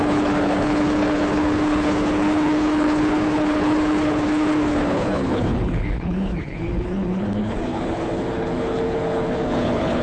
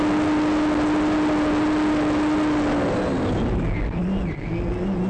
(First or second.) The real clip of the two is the second